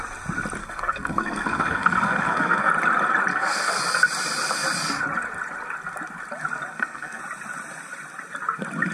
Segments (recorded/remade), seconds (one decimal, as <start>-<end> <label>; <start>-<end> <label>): 0.0-0.6 recorded; 0.6-2.7 remade; 2.7-3.3 recorded; 3.3-3.8 remade; 3.8-6.7 recorded; 6.7-7.2 remade; 7.2-8.9 recorded